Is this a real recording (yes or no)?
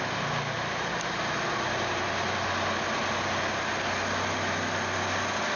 yes